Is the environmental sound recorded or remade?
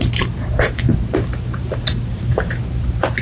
remade